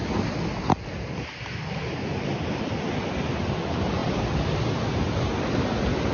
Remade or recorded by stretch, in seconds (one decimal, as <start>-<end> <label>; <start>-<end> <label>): 0.0-6.1 recorded